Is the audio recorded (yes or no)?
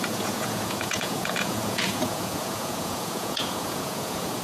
no